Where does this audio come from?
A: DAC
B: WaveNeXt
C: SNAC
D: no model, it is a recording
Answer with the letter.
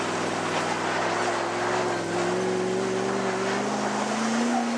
D